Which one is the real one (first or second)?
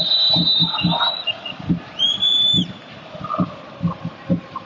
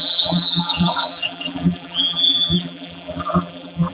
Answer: first